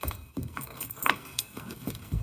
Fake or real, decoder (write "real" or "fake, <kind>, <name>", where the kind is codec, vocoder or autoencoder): fake, codec, SNAC